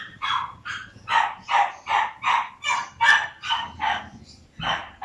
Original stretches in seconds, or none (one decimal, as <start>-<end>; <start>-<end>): 0.8-3.8